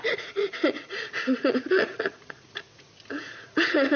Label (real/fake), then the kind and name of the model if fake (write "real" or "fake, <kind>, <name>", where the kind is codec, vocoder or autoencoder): fake, vocoder, Vocos